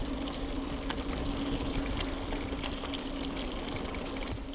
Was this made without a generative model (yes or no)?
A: yes